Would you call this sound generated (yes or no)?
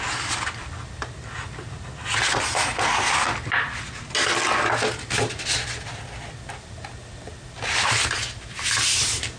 no